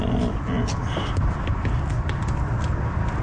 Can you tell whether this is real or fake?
real